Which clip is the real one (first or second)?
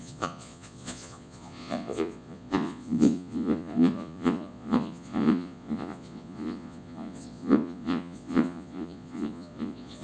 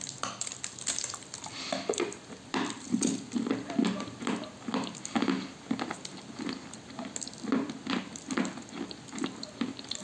second